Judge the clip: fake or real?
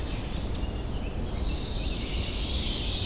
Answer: real